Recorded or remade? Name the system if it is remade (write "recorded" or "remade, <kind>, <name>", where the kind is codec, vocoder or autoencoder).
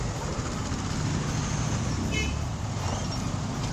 recorded